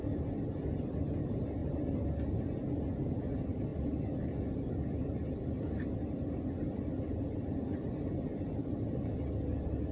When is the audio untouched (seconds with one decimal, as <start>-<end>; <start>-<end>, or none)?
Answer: 0.0-9.9